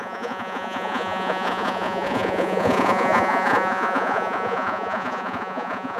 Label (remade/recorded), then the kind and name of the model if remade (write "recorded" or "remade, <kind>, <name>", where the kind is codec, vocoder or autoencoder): remade, vocoder, Vocos